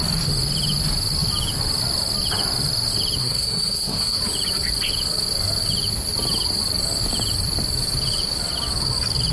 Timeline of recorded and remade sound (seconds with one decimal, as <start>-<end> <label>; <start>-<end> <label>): 0.0-3.2 recorded; 3.2-4.2 remade; 4.2-9.3 recorded